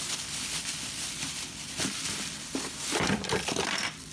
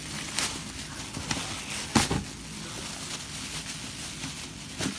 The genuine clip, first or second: second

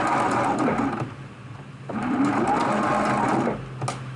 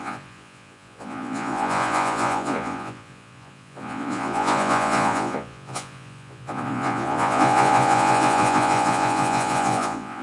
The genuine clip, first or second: first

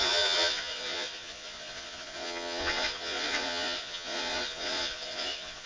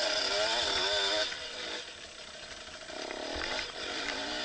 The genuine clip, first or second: second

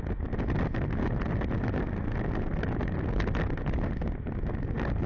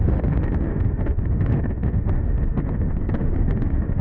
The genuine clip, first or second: first